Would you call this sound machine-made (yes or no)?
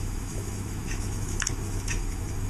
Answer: yes